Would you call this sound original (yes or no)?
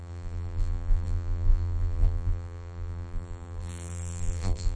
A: no